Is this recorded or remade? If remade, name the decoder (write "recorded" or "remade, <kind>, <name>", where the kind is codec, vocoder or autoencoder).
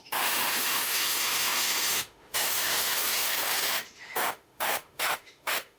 remade, autoencoder, DAC-VAE